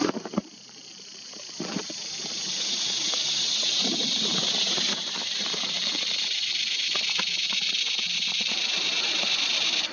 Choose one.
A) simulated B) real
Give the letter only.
A